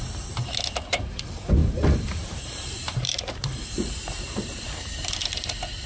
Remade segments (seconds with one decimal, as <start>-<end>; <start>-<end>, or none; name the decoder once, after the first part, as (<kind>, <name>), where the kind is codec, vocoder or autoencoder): 1.6-5.1 (vocoder, BigVGAN v2)